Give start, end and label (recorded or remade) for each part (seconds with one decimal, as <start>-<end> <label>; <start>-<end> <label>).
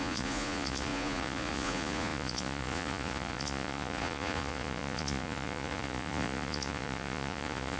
0.0-7.8 remade